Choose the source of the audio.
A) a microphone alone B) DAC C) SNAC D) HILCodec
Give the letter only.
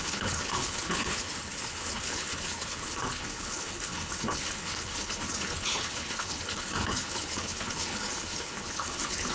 D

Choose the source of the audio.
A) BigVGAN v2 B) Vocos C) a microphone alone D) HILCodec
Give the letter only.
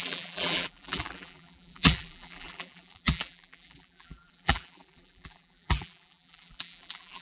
A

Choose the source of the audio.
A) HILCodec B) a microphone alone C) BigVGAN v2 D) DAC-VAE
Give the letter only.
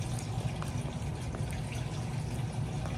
B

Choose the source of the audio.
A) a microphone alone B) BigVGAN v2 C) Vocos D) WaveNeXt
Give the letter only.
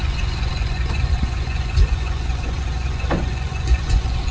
C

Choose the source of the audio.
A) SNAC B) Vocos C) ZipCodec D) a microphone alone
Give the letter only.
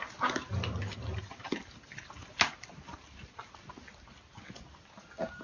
D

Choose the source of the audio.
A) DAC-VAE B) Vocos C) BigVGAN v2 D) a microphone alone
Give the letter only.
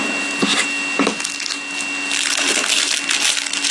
D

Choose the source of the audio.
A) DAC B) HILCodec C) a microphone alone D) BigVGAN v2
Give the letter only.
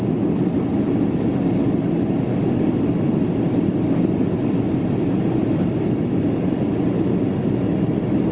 C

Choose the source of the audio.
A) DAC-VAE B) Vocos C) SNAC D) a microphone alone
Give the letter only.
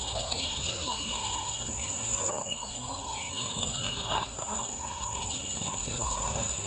C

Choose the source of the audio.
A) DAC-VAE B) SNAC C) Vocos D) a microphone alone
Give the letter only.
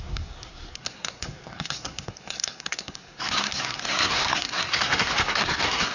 B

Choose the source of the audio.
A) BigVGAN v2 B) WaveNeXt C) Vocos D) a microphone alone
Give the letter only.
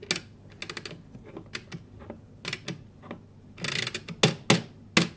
D